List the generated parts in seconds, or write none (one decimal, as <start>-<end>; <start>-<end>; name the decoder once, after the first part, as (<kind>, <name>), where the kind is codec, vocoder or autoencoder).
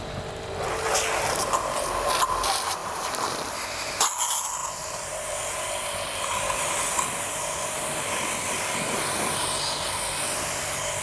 2.8-3.5 (vocoder, BigVGAN v2); 4.6-5.4